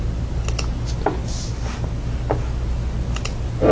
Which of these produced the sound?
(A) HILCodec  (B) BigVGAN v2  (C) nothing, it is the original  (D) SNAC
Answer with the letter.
C